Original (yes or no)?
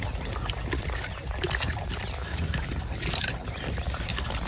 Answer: yes